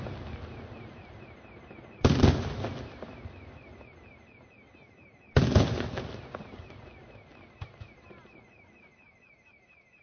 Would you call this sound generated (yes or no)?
no